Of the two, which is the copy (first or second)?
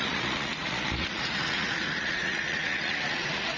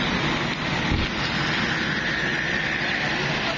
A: first